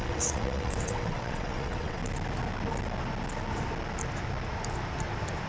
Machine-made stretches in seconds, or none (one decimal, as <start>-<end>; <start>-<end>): 0.0-2.0